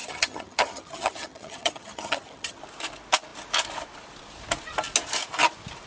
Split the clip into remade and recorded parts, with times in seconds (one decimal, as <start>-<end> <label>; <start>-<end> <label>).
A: 0.0-2.6 remade; 2.6-5.9 recorded